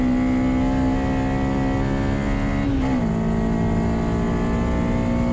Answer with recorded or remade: recorded